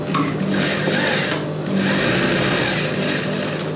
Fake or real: real